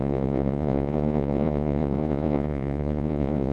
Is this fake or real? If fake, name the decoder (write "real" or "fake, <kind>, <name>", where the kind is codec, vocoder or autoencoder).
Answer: fake, vocoder, Vocos